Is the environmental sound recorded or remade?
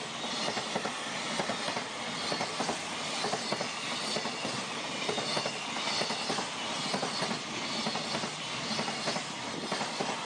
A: recorded